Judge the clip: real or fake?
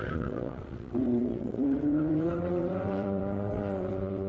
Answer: fake